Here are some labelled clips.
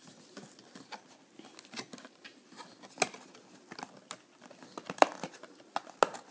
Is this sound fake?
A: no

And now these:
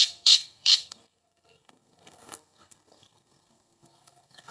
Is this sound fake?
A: yes